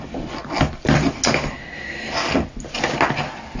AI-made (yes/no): no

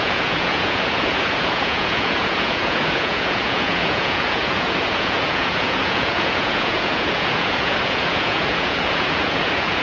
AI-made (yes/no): yes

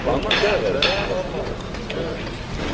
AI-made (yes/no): no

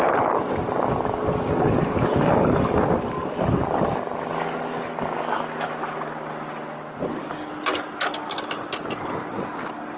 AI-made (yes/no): no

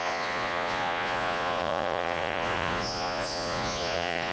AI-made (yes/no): yes